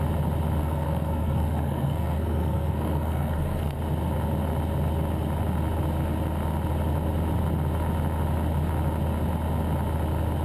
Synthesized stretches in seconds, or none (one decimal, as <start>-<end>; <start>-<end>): 0.6-3.8

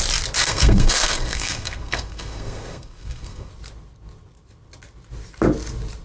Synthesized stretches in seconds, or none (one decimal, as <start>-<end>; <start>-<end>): 0.4-3.5

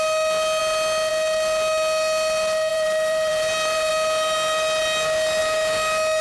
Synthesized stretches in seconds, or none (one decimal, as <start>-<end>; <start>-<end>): 2.7-3.9

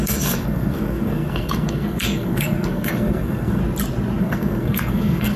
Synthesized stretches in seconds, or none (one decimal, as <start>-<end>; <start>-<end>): 0.0-3.6; 4.2-5.4